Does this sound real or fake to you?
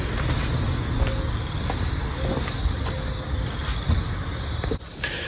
real